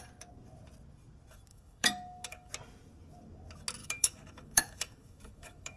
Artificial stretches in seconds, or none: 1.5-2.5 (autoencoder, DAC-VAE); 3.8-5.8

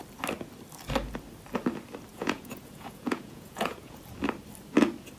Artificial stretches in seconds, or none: 2.1-4.0 (vocoder, Vocos)

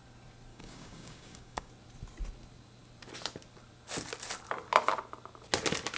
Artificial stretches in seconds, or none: 0.5-1.7 (codec, DAC)

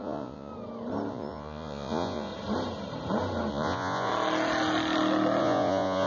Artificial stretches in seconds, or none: 0.0-0.5 (vocoder, Vocos); 1.1-2.3; 3.5-4.1; 5.4-6.1